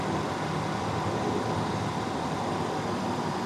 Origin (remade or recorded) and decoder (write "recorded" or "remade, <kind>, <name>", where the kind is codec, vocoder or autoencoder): recorded